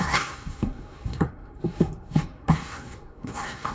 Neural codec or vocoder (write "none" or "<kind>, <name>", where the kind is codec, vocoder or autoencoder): codec, SNAC